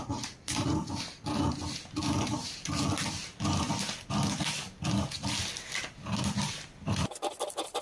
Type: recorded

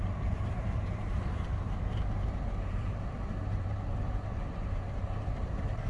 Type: remade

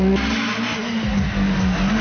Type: recorded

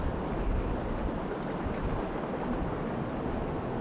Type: recorded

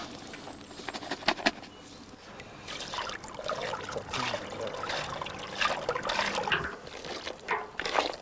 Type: recorded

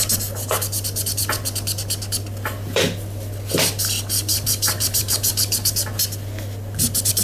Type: recorded